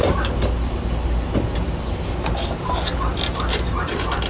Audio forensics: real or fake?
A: real